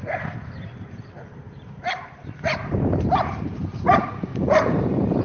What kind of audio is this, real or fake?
fake